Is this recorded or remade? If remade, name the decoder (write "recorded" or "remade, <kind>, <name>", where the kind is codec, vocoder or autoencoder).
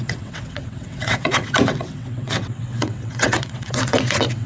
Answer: remade, vocoder, WaveNeXt